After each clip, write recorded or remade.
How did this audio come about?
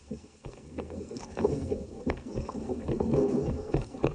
remade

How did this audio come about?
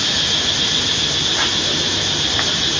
recorded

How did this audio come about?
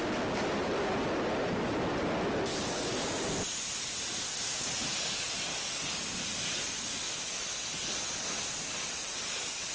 recorded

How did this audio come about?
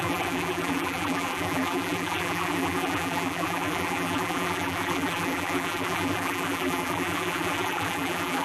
remade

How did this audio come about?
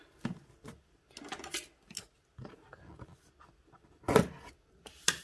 recorded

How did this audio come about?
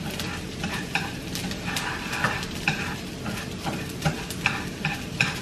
remade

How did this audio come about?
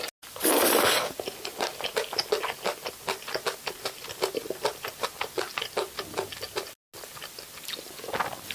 recorded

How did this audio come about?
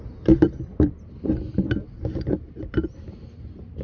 recorded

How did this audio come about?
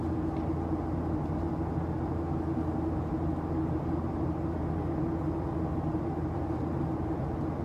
recorded